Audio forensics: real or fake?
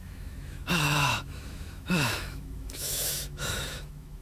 fake